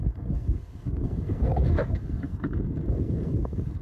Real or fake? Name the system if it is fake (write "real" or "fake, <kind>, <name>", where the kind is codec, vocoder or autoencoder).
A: fake, codec, SNAC